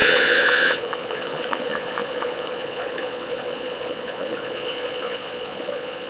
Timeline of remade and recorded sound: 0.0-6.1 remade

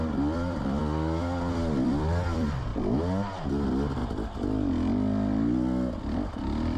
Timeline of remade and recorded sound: 0.0-0.8 remade; 0.8-1.5 recorded; 1.5-2.7 remade; 2.7-3.5 recorded; 3.5-4.0 remade; 4.0-6.0 recorded; 6.0-6.8 remade

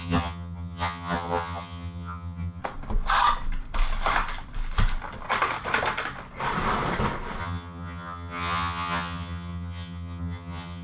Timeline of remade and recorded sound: 0.0-2.6 remade; 2.6-7.4 recorded; 7.4-10.8 remade

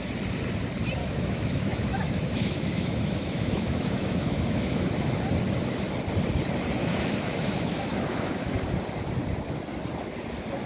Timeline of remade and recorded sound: 0.0-1.0 recorded; 1.0-5.2 remade; 5.2-6.8 recorded; 6.8-8.5 remade; 8.5-10.7 recorded

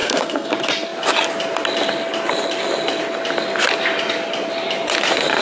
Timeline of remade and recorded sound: 0.0-0.5 remade; 0.5-5.4 recorded

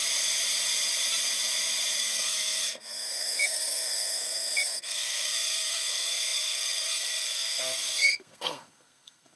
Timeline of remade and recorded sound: 0.0-2.0 recorded; 2.0-9.4 remade

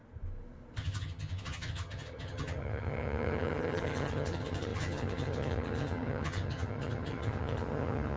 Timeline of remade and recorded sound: 0.0-0.8 recorded; 0.8-8.2 remade